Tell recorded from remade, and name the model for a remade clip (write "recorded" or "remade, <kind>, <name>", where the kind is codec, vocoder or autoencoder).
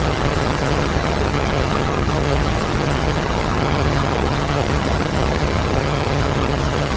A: remade, vocoder, HiFi-GAN